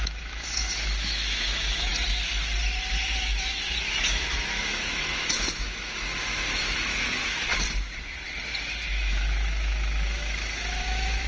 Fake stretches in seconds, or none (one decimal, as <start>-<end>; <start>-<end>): 0.0-1.9; 3.2-7.5; 8.9-11.3